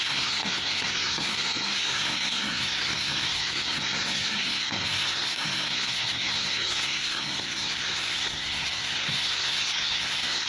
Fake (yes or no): yes